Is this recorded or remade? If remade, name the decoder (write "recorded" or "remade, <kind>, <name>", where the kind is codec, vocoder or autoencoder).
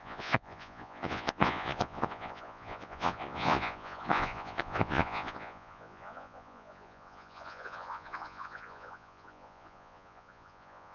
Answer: remade, vocoder, Vocos